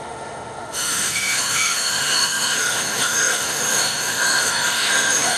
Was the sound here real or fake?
fake